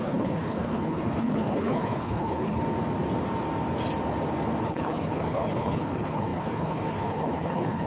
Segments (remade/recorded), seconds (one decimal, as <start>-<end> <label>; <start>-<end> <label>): 0.0-2.6 remade; 2.6-4.6 recorded; 4.6-7.9 remade